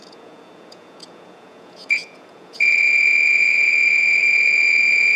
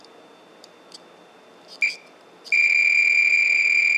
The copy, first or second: first